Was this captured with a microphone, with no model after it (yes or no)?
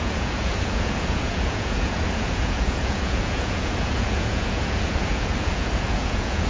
no